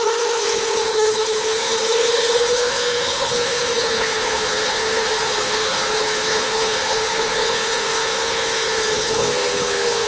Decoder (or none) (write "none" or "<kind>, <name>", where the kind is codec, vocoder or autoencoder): codec, HILCodec